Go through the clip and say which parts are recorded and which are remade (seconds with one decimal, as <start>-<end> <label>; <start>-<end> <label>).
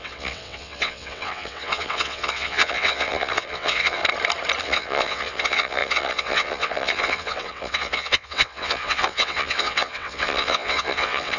0.0-4.0 remade; 4.0-4.6 recorded; 4.6-11.4 remade